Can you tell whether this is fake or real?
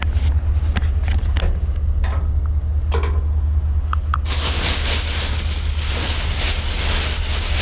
real